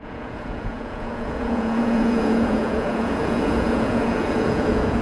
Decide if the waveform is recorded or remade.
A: remade